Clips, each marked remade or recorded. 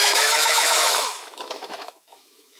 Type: remade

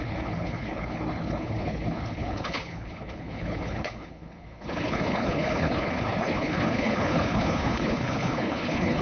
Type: remade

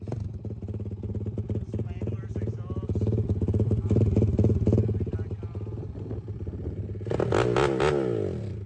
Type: recorded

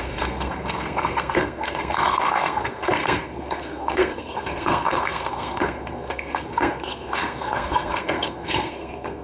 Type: remade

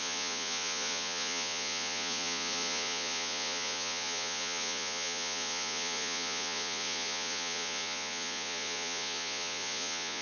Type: remade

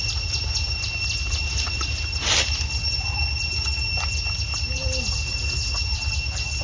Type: recorded